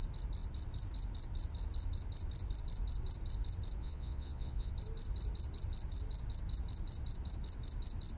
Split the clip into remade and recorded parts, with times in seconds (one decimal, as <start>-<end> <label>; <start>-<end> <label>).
0.0-3.8 recorded; 3.8-4.7 remade; 4.7-8.2 recorded